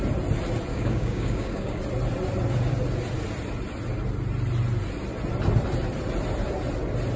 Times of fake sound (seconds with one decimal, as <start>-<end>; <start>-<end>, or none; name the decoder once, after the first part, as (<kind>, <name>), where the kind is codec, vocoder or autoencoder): 0.7-1.8 (codec, DAC)